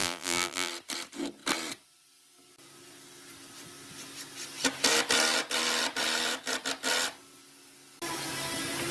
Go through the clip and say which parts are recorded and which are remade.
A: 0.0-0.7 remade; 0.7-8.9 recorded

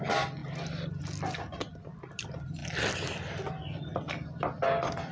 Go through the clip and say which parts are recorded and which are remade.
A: 0.0-5.1 recorded

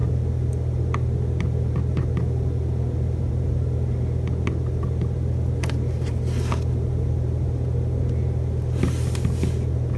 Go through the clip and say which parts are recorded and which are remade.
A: 0.0-10.0 recorded

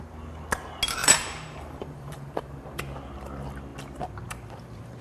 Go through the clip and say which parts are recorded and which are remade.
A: 0.0-1.0 recorded; 1.0-2.8 remade; 2.8-5.0 recorded

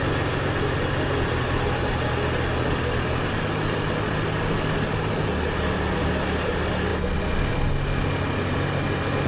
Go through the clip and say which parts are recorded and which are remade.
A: 0.0-9.3 recorded

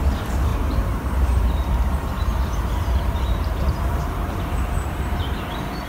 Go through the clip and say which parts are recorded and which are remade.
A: 0.0-5.9 remade